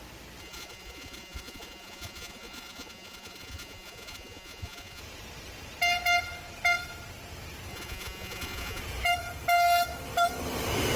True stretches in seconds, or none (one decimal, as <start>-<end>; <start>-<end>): 0.0-0.4; 5.0-7.7; 8.8-11.0